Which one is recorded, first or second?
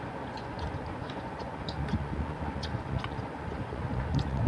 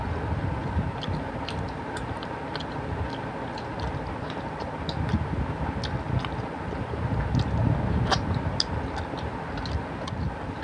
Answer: second